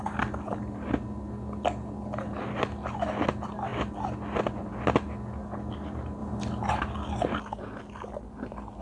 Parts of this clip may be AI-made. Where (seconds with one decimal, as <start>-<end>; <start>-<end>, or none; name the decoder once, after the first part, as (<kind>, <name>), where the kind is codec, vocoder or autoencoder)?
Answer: none